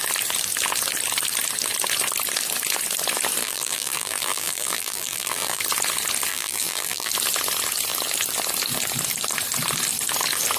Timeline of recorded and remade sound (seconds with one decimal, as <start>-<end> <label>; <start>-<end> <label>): 0.0-3.4 recorded; 3.4-5.6 remade; 5.6-6.3 recorded; 6.3-7.1 remade; 7.1-10.6 recorded